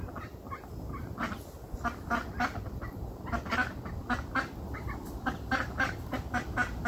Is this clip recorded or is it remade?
recorded